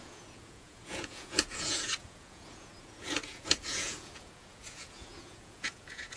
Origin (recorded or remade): remade